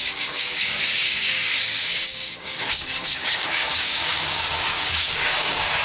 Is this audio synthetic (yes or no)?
yes